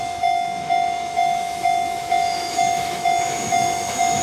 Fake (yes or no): yes